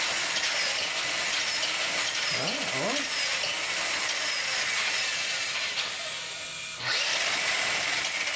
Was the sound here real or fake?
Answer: real